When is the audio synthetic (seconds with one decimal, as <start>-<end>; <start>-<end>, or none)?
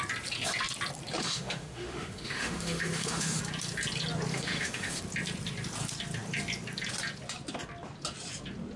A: 1.2-3.4; 4.3-5.0